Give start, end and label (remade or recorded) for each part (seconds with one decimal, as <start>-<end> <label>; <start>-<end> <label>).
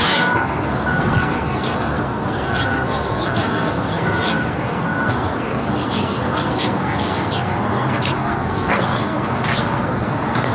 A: 0.0-10.5 remade